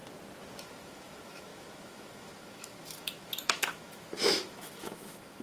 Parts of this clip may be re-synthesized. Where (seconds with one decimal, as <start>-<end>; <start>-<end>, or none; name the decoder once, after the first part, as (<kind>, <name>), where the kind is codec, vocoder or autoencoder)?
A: 0.6-5.4 (autoencoder, DAC-VAE)

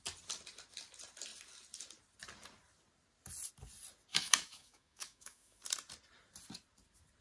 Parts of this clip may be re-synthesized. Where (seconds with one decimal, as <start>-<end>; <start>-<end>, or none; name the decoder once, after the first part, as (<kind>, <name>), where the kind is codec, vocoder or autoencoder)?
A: 4.1-5.6 (autoencoder, DAC-VAE)

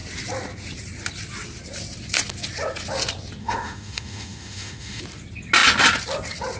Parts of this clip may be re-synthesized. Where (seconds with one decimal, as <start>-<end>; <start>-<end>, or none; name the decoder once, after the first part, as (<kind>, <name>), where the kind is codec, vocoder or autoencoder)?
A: 3.4-5.0 (autoencoder, DAC-VAE)